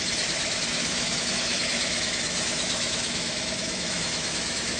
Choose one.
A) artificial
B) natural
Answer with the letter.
A